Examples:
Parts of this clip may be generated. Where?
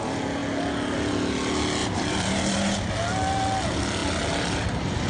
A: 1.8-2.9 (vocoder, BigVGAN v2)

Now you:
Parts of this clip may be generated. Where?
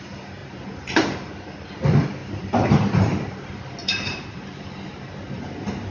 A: 0.4-1.3 (vocoder, BigVGAN v2); 2.2-5.9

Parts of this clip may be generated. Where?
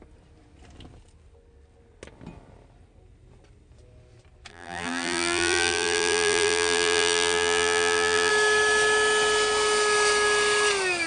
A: 4.5-8.3 (vocoder, BigVGAN v2)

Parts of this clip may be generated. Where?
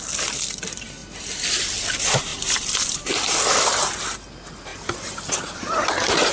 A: 1.0-1.6 (vocoder, BigVGAN v2); 2.3-4.0; 4.7-5.6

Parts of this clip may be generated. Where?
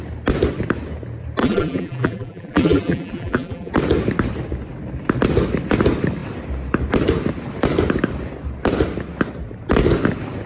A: 1.4-3.7 (vocoder, BigVGAN v2)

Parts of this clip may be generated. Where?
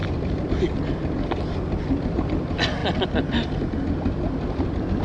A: 2.0-2.8 (vocoder, BigVGAN v2)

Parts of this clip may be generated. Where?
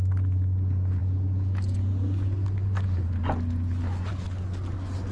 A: none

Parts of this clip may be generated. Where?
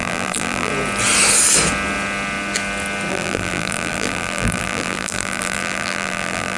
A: 0.0-0.7 (vocoder, BigVGAN v2); 3.1-6.6